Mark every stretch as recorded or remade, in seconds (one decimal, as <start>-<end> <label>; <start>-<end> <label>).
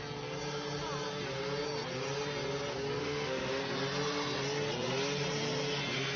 0.0-3.0 recorded; 3.0-3.6 remade; 3.6-6.2 recorded